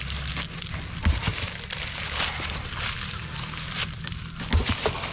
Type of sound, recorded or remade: recorded